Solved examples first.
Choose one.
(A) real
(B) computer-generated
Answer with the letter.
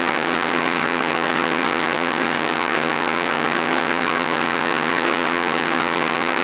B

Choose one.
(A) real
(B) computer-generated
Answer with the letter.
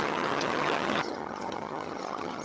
B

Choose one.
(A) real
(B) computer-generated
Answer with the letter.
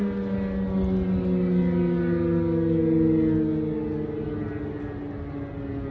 A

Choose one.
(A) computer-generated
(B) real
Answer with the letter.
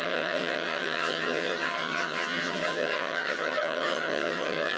A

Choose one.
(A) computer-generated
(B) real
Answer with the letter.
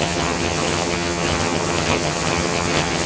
A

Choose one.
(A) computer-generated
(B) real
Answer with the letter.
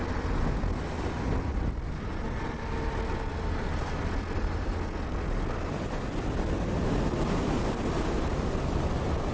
B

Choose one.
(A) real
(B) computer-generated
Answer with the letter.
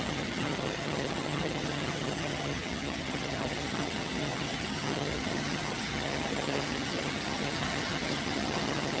B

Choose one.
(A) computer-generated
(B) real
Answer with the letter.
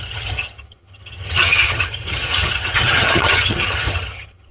A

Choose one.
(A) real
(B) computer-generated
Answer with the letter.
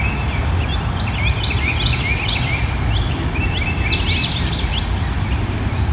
A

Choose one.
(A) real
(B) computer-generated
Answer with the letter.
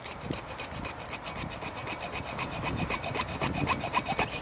A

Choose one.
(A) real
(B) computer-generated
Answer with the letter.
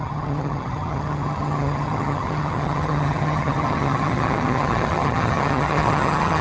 B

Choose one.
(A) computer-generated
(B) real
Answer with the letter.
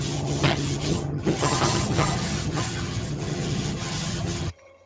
A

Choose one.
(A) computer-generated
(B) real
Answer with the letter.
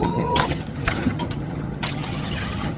A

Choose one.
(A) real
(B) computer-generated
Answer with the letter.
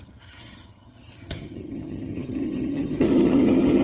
B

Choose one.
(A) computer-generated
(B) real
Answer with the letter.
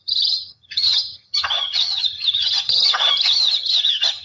A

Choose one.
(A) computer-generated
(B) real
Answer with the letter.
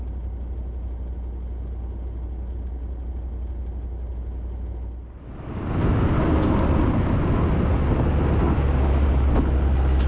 B